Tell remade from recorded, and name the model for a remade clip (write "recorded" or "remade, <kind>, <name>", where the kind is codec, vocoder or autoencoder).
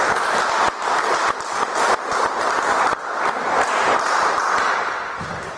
recorded